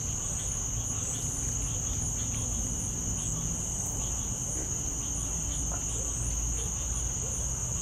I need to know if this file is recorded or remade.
recorded